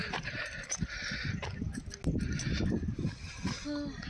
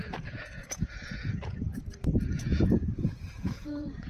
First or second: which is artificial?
second